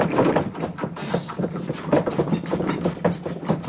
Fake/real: real